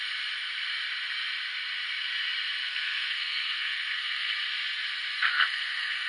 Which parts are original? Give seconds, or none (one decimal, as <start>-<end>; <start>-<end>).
0.0-2.6; 4.3-5.3